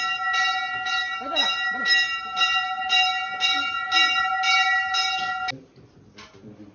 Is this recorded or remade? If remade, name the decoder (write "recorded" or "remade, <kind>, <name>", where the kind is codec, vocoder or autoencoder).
recorded